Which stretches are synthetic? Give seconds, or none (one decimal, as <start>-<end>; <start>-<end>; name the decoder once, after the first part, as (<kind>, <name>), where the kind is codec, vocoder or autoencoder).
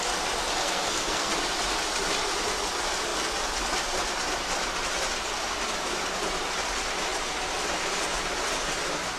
0.6-1.3 (codec, SNAC)